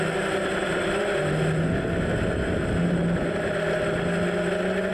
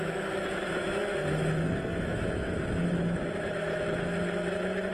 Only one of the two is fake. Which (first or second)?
second